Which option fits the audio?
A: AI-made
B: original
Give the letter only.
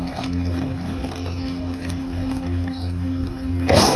A